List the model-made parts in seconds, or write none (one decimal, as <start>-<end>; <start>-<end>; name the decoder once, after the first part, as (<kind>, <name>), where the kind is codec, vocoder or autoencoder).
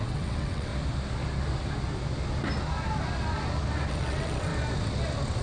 0.0-0.7 (vocoder, WaveNeXt); 3.9-4.5